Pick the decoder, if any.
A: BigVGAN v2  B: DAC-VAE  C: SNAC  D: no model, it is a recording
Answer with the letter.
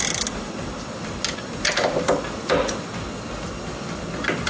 D